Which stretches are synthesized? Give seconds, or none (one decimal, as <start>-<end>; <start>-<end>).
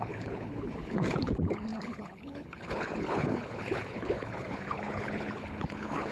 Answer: 0.0-6.1